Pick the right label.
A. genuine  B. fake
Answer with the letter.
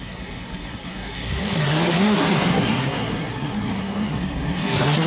B